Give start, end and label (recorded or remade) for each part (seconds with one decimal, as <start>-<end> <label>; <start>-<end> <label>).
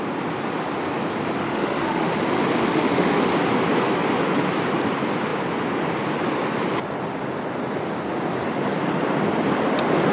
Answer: 0.0-1.4 recorded; 1.4-2.1 remade; 2.1-2.6 recorded; 2.6-3.3 remade; 3.3-10.1 recorded